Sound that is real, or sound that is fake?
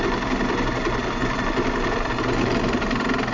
real